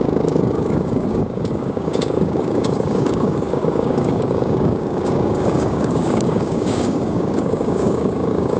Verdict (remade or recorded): remade